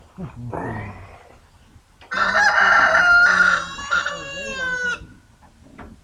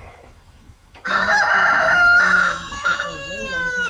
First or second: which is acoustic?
first